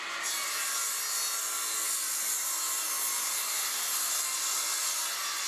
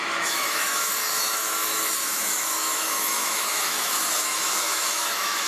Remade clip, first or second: second